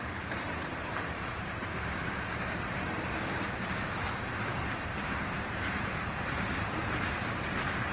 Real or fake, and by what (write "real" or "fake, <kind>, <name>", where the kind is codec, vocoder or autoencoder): fake, vocoder, BigVGAN v2